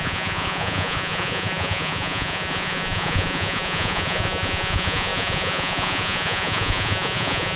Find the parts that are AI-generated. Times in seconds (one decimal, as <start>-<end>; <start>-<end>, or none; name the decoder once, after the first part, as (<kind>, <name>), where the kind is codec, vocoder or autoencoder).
0.0-7.6 (vocoder, Vocos)